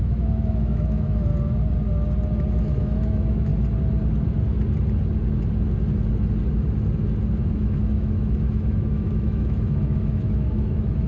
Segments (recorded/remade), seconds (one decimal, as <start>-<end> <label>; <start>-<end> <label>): 0.0-1.3 remade; 1.3-2.5 recorded; 2.5-3.5 remade; 3.5-7.5 recorded; 7.5-11.1 remade

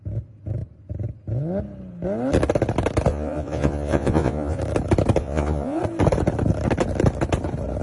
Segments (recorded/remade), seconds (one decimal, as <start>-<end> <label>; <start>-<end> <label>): 0.0-3.1 recorded; 3.1-4.6 remade; 4.6-5.2 recorded; 5.2-5.8 remade; 5.8-7.8 recorded